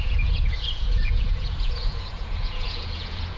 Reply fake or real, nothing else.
fake